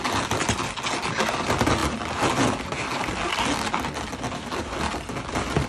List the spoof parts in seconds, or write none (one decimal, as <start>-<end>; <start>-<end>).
none